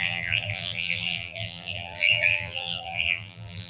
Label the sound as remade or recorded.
remade